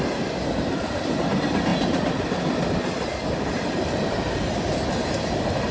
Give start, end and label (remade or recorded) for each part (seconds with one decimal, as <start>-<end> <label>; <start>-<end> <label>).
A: 0.0-5.7 recorded

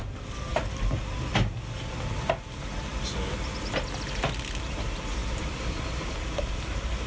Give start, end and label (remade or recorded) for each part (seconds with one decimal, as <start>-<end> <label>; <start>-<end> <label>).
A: 0.0-0.5 recorded; 0.5-1.3 remade; 1.3-5.2 recorded; 5.2-7.1 remade

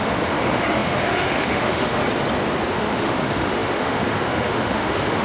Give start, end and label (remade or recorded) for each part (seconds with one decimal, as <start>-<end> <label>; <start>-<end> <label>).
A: 0.0-2.0 remade; 2.0-2.7 recorded; 2.7-5.2 remade

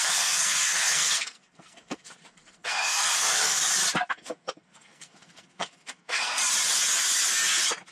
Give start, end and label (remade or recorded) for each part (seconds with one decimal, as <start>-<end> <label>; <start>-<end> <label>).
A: 0.0-3.6 remade; 3.6-4.1 recorded; 4.1-6.4 remade; 6.4-7.9 recorded

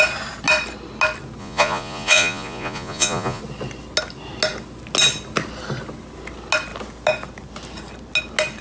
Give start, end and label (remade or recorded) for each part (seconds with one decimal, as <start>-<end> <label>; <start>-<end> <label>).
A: 0.0-1.4 recorded; 1.4-3.4 remade; 3.4-8.6 recorded

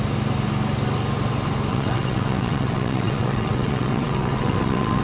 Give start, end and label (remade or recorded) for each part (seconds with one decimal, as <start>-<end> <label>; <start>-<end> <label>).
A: 0.0-1.7 recorded; 1.7-5.0 remade

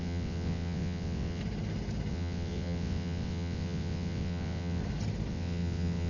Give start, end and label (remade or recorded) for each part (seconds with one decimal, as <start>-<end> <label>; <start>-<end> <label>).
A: 0.0-1.4 remade; 1.4-2.1 recorded; 2.1-4.8 remade; 4.8-5.3 recorded; 5.3-6.1 remade